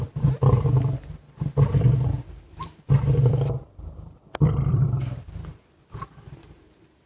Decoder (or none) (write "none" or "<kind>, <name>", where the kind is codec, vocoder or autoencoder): vocoder, BigVGAN v2